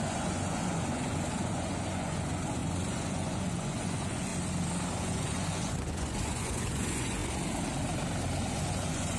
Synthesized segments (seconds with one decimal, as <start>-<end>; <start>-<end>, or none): 0.0-4.3; 5.0-7.2; 8.5-9.2